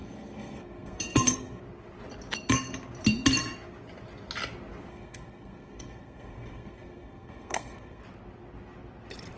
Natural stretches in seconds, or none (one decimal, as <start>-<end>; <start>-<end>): 1.6-4.9; 8.0-9.4